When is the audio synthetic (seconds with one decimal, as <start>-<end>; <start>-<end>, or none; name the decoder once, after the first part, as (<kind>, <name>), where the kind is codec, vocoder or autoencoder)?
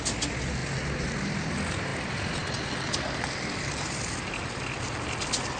none